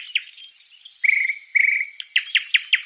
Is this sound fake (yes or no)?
no